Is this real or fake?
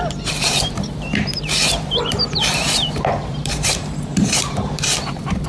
fake